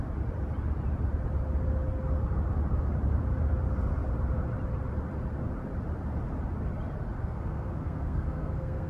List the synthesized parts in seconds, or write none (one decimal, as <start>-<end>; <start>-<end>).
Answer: 7.2-8.9